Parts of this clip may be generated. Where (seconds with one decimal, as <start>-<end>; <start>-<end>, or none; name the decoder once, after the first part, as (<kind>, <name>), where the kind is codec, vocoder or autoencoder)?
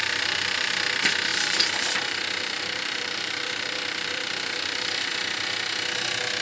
0.0-0.7 (vocoder, BigVGAN v2); 1.3-5.1